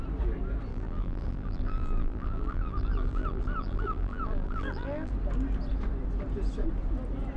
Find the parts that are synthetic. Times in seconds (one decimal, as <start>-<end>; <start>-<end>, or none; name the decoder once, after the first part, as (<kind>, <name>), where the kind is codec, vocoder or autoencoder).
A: 0.7-5.1 (vocoder, BigVGAN v2)